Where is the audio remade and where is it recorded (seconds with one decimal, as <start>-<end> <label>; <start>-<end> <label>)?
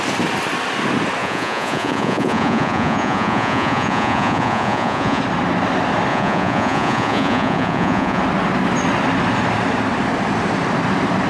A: 0.0-1.2 recorded; 1.2-5.2 remade; 5.2-6.1 recorded; 6.1-8.2 remade; 8.2-11.3 recorded